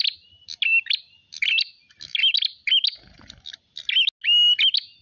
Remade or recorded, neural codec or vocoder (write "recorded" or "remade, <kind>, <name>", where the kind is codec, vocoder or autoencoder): recorded